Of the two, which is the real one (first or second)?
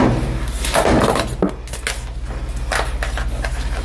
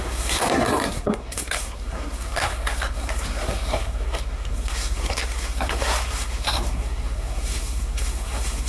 first